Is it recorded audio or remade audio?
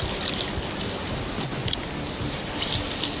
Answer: recorded